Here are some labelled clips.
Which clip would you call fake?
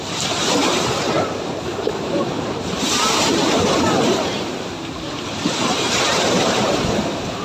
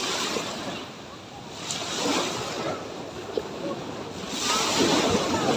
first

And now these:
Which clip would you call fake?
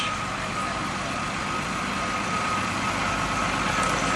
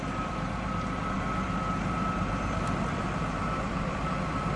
second